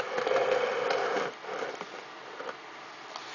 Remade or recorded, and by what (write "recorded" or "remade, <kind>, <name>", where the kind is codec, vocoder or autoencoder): recorded